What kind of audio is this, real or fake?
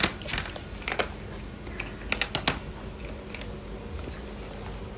real